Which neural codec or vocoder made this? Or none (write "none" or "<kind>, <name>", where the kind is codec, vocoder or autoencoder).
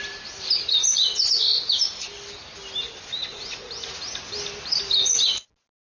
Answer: none